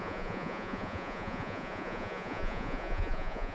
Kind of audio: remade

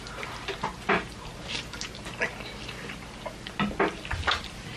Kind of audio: recorded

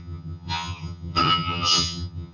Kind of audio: remade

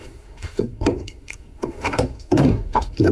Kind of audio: remade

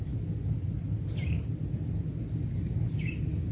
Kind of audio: recorded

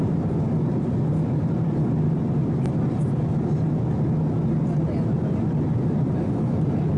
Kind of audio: recorded